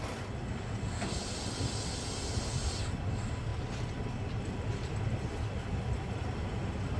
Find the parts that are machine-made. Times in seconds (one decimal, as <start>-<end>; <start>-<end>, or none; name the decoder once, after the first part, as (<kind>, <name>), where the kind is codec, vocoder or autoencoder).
none